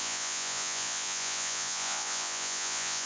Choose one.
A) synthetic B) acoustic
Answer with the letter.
A